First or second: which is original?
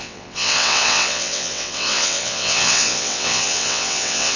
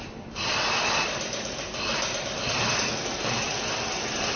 second